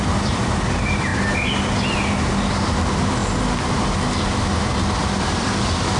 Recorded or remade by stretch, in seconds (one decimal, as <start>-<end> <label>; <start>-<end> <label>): 0.0-1.1 remade; 1.1-2.5 recorded; 2.5-3.2 remade; 3.2-4.8 recorded; 4.8-6.0 remade